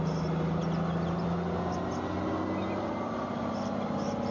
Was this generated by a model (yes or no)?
no